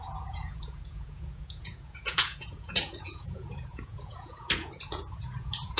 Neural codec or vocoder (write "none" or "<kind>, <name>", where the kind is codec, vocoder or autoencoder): vocoder, Vocos